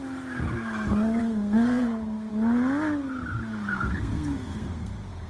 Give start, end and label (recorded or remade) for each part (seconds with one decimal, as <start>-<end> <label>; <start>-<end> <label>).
0.0-1.2 recorded; 1.2-2.3 remade; 2.3-3.7 recorded; 3.7-5.3 remade